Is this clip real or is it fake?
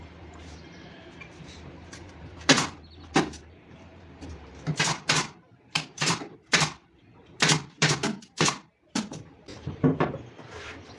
fake